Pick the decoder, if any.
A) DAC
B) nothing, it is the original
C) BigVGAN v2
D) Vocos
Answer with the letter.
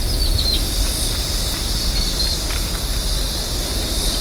B